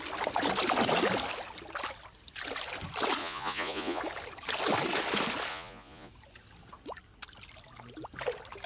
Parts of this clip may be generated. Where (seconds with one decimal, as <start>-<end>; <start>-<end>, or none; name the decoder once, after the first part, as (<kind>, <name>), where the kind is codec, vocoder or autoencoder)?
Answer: 3.2-4.0 (vocoder, Vocos); 5.5-6.1